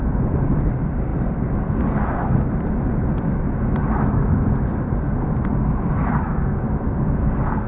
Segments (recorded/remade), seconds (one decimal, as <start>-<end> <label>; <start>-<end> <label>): 0.0-1.1 recorded; 1.1-1.7 remade; 1.7-5.5 recorded; 5.5-6.2 remade; 6.2-7.7 recorded